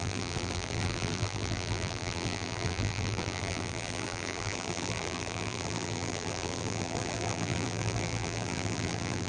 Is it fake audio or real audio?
fake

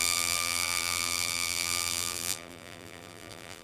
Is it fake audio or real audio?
fake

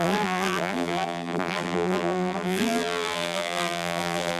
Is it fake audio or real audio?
fake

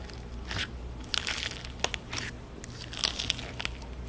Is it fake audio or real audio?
real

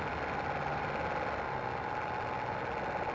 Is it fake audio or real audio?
real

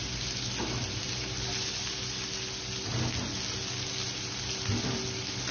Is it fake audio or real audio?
real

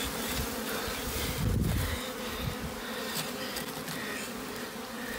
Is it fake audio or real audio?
real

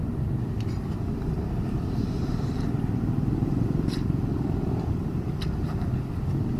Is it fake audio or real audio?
real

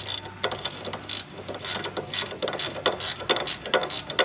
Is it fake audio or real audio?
real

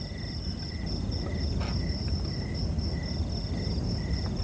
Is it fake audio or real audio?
real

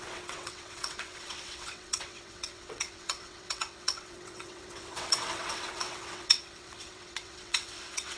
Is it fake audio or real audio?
fake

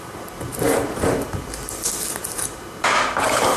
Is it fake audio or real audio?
fake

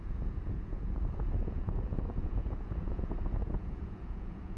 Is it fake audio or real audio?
fake